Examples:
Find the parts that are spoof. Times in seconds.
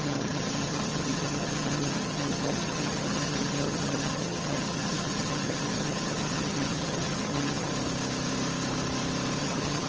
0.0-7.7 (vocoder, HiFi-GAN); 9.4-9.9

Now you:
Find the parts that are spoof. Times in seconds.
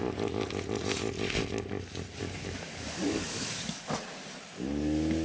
2.2-3.9 (codec, DAC)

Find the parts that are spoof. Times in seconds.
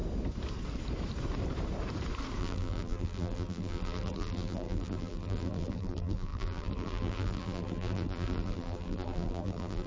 2.4-9.9 (vocoder, BigVGAN v2)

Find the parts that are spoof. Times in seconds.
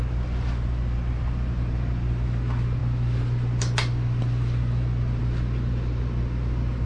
none